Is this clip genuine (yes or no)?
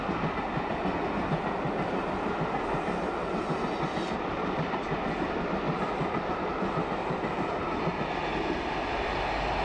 yes